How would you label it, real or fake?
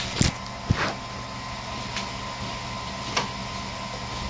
real